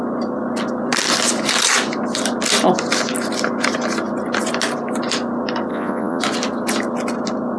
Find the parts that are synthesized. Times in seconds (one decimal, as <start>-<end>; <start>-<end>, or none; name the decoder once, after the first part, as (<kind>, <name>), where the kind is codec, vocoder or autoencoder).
5.7-6.2 (vocoder, Vocos)